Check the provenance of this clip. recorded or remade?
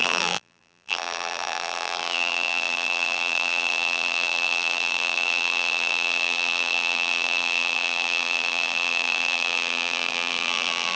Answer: remade